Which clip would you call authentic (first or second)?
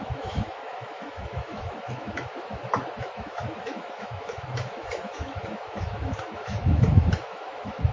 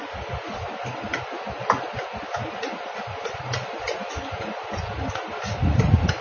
second